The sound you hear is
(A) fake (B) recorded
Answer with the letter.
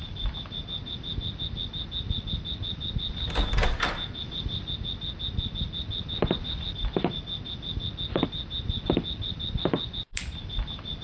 B